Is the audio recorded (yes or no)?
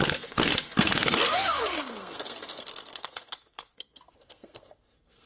no